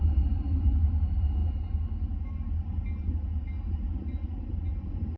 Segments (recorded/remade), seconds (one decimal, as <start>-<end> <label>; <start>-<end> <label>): 0.0-5.2 recorded